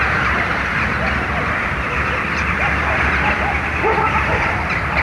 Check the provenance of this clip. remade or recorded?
recorded